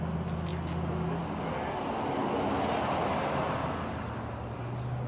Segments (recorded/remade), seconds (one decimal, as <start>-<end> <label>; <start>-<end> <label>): 0.0-5.1 recorded